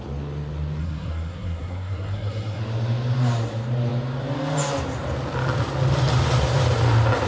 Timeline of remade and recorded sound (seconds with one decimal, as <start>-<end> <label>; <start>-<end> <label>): 0.0-0.8 recorded; 0.8-2.6 remade; 2.6-7.3 recorded